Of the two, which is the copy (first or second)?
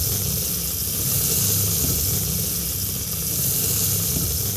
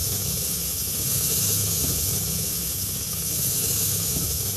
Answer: second